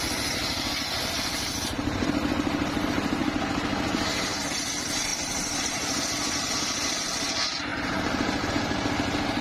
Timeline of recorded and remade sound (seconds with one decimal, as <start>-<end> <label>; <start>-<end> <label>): 0.0-3.2 remade; 3.2-4.4 recorded; 4.4-9.4 remade